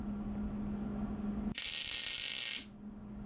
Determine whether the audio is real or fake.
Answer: real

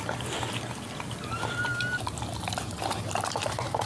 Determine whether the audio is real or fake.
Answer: real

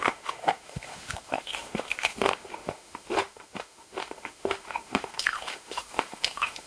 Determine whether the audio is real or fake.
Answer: fake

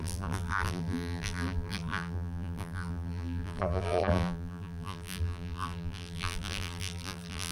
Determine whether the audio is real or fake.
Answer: fake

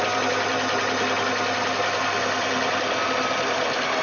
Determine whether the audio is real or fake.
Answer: real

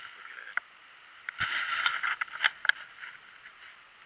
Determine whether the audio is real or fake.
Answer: real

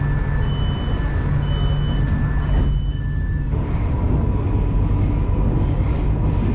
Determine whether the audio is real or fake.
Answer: real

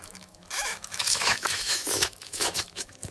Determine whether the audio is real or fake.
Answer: fake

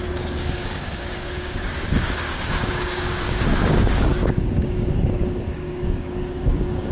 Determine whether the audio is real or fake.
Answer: fake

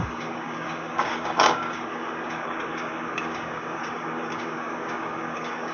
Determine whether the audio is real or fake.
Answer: fake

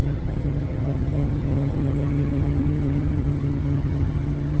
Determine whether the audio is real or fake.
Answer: fake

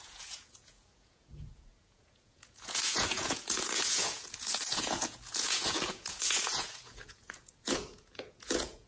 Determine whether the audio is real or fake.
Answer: fake